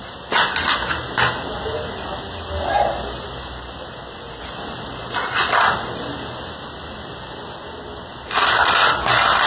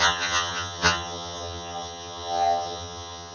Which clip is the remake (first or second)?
second